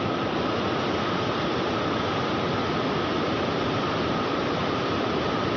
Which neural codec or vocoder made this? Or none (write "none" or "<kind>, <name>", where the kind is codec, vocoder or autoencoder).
none